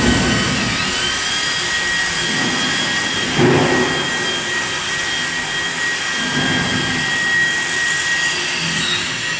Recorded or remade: recorded